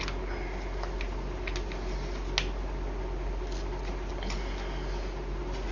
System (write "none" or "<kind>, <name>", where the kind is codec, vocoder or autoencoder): none